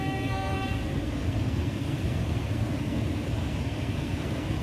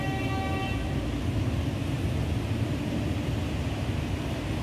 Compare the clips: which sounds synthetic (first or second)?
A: first